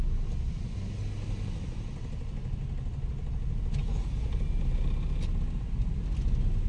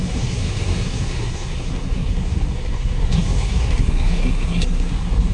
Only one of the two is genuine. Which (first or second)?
first